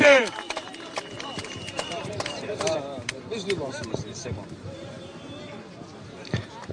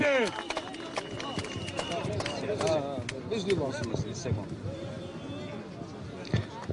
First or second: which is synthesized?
first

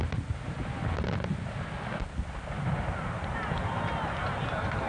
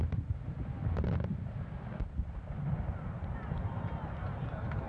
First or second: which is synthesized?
second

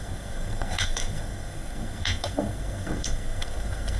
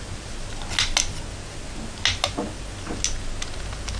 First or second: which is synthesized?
first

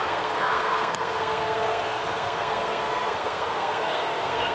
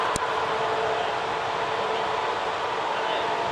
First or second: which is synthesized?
first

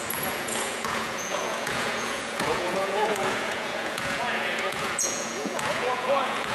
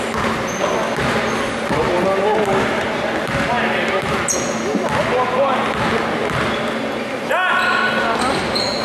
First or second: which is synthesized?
first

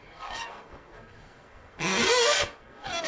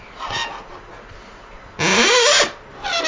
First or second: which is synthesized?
first